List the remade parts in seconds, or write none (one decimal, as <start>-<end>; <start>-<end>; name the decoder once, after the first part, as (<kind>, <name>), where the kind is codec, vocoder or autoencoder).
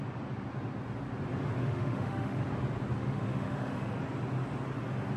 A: 1.6-2.4 (autoencoder, DAC-VAE); 3.0-4.0